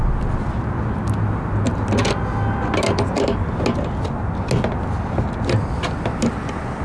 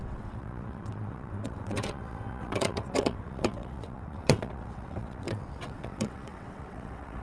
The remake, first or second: second